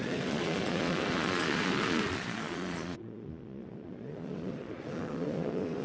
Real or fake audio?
fake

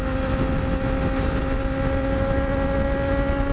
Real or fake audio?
real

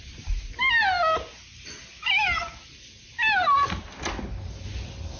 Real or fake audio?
real